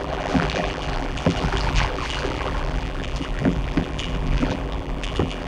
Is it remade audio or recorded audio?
remade